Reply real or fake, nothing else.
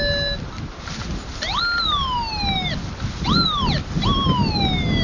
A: real